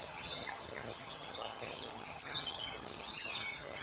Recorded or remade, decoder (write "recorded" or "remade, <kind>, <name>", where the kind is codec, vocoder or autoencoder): remade, vocoder, HiFi-GAN